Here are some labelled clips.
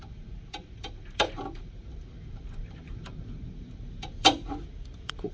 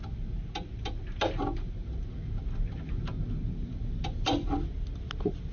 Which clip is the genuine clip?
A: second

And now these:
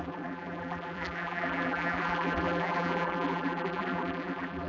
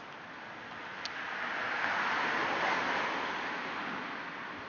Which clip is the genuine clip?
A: second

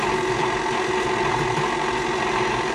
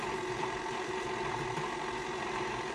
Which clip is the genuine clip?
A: first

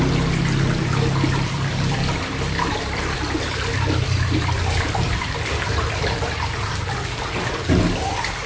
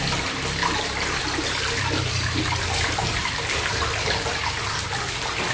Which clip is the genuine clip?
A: second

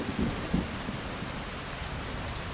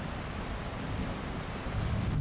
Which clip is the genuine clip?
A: second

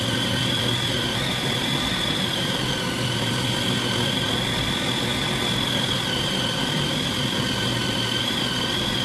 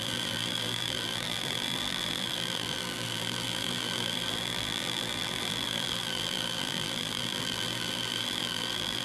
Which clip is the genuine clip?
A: first